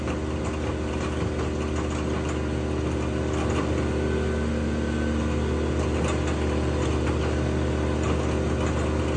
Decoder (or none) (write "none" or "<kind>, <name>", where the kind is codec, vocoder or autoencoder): none